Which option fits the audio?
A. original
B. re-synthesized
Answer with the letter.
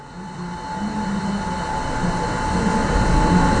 A